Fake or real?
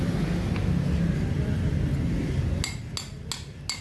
real